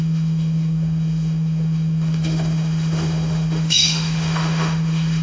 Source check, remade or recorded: remade